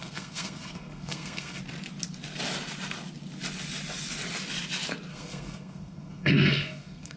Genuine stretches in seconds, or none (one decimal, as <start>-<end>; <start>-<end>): 1.6-5.1